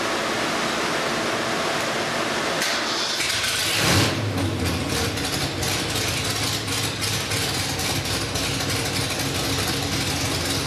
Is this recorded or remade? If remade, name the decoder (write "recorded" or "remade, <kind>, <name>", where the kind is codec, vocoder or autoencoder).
recorded